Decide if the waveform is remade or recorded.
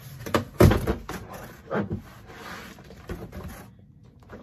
recorded